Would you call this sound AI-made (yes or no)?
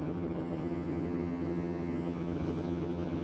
yes